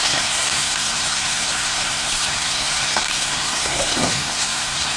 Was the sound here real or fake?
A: fake